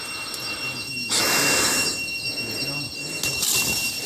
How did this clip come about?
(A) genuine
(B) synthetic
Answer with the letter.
A